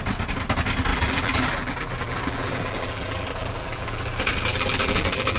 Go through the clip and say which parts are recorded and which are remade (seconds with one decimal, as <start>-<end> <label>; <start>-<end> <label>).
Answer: 0.0-0.9 recorded; 0.9-4.1 remade; 4.1-4.5 recorded; 4.5-5.4 remade